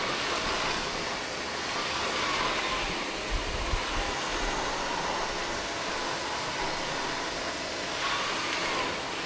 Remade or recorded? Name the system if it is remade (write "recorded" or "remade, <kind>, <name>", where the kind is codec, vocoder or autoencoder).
recorded